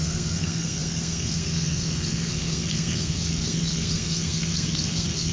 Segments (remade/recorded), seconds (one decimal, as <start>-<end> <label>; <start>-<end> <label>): 0.0-5.3 remade